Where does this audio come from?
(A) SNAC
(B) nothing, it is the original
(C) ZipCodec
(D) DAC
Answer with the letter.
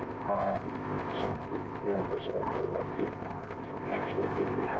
C